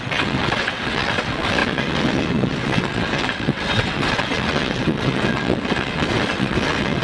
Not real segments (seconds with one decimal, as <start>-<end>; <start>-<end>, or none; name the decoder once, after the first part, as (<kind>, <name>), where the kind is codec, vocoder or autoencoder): 0.0-7.0 (vocoder, WaveNeXt)